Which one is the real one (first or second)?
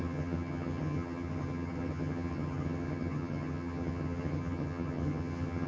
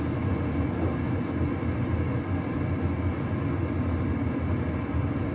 second